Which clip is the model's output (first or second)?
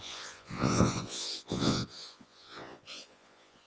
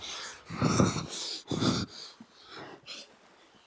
first